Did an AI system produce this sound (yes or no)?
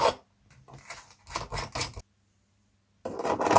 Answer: no